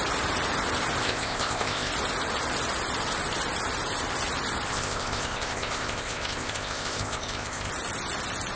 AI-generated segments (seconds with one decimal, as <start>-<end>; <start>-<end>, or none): 1.0-1.9; 4.7-7.7